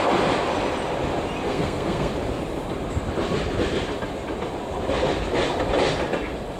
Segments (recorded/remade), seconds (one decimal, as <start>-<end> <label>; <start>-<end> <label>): 0.0-1.5 recorded; 1.5-2.1 remade; 2.1-6.6 recorded